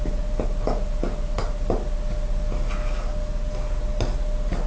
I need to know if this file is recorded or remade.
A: recorded